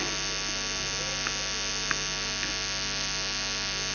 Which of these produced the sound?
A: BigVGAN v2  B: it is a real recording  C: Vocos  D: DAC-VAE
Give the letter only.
B